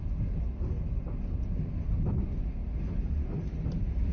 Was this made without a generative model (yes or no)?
yes